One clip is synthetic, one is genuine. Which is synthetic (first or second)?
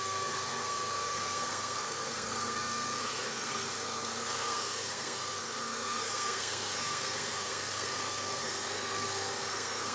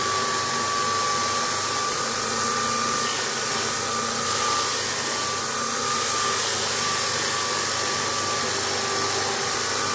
first